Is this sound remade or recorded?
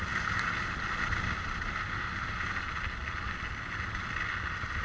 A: recorded